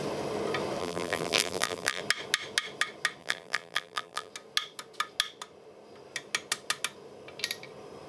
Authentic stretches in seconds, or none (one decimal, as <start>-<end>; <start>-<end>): 0.0-0.8; 2.0-3.2; 4.3-8.1

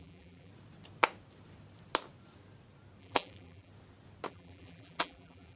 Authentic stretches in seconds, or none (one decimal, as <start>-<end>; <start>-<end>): 0.5-3.0; 3.7-4.3

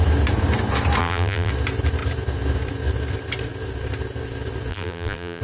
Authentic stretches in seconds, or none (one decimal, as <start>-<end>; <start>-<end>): 0.0-1.0; 1.5-4.7

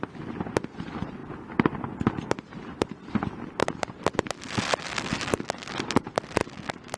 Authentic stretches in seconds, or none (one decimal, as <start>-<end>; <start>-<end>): 6.4-7.0

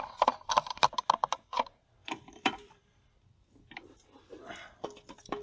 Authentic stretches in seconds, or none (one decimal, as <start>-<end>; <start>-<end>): 0.0-2.0; 3.1-5.4

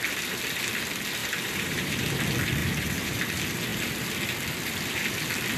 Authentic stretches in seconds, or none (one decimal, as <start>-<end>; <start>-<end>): 0.0-1.2; 2.2-2.6; 3.2-5.6

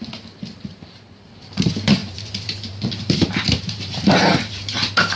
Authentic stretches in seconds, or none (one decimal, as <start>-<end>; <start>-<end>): 0.0-2.0

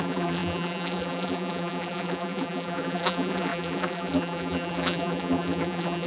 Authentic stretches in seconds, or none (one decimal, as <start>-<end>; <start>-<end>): none